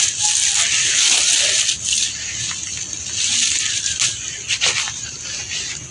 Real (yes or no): yes